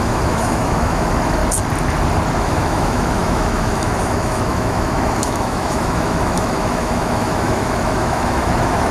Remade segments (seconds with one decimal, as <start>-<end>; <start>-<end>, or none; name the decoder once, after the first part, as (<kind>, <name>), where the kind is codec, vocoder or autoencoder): 0.0-1.4 (autoencoder, DAC-VAE); 2.4-8.9